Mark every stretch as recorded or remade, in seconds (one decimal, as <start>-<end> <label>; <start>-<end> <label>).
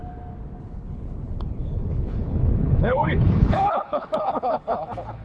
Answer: 0.0-0.6 recorded; 0.6-5.2 remade